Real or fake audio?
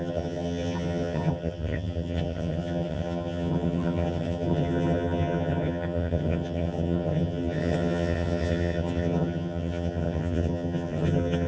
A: fake